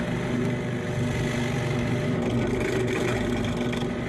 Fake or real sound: real